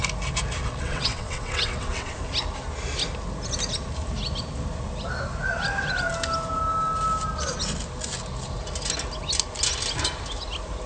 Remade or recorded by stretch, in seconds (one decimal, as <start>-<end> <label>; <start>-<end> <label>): 0.0-0.6 recorded; 0.6-2.2 remade; 2.2-10.9 recorded